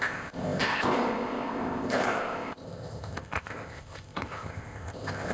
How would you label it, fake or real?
fake